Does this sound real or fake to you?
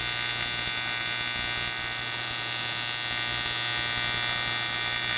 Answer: real